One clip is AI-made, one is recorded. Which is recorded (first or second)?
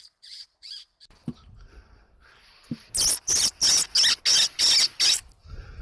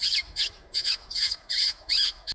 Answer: first